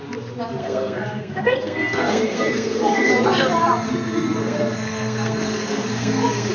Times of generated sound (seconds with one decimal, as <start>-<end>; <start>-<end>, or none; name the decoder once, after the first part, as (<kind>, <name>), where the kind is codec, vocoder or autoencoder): 0.6-3.1 (codec, SNAC); 4.4-6.5